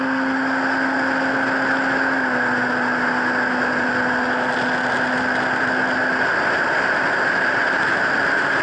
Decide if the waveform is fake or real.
real